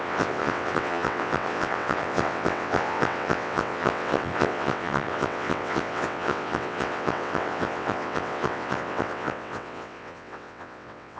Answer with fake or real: fake